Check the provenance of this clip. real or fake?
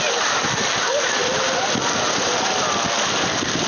real